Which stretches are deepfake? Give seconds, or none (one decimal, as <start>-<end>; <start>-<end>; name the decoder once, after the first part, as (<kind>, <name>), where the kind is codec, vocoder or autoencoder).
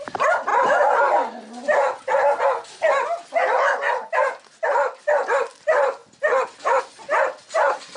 none